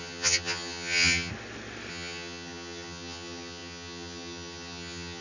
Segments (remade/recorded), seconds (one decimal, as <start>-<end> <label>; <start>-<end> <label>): 0.0-1.3 remade; 1.3-1.9 recorded; 1.9-5.2 remade